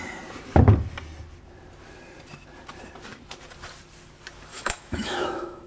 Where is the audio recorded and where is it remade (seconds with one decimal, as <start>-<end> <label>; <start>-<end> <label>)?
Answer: 0.0-4.5 recorded; 4.5-5.7 remade